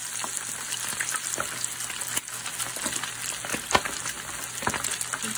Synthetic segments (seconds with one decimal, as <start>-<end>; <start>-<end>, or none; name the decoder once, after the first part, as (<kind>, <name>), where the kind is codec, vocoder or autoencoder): none

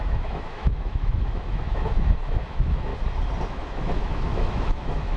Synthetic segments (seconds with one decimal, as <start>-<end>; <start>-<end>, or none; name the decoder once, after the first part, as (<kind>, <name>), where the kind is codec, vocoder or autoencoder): 0.0-2.9 (autoencoder, DAC-VAE); 3.5-5.2